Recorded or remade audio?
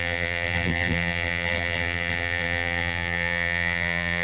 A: remade